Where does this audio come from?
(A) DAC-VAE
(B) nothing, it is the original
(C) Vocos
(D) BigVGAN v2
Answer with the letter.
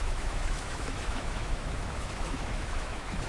A